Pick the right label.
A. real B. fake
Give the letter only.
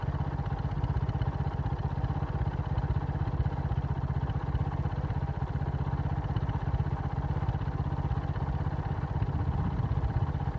A